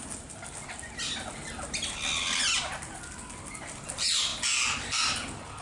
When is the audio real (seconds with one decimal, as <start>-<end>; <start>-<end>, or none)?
0.0-5.6